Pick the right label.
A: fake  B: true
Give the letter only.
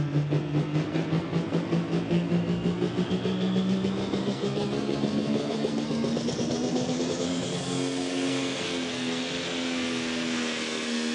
A